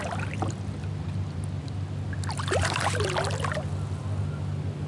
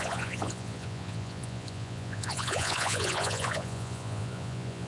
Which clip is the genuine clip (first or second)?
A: first